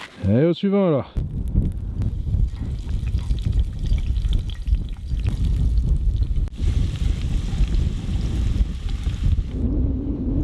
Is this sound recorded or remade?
recorded